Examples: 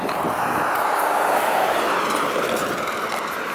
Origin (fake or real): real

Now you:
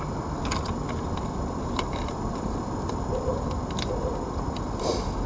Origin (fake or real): fake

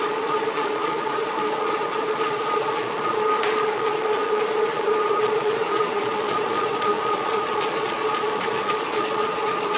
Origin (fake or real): fake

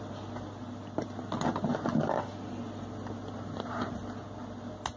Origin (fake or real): real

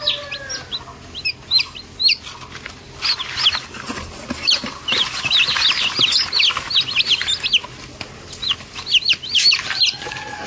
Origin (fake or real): real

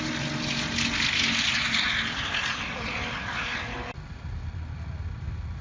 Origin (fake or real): real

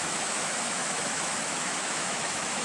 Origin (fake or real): fake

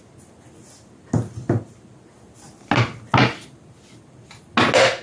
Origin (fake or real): real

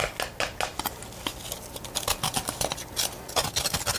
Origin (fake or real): real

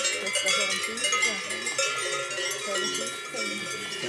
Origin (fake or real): real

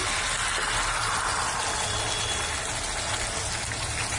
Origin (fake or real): real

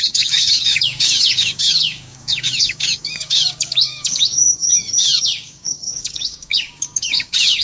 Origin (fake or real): fake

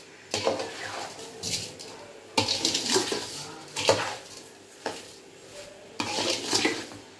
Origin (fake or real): real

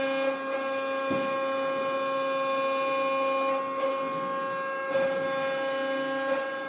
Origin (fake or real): real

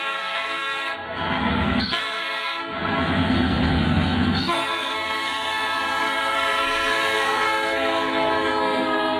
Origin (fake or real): fake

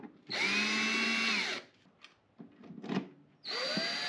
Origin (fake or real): real